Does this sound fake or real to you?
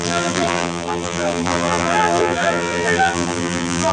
fake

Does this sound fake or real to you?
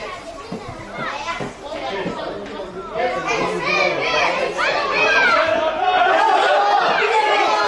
real